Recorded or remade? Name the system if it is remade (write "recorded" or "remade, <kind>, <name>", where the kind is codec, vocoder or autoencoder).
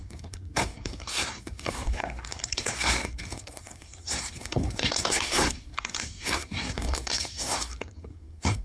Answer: remade, codec, SNAC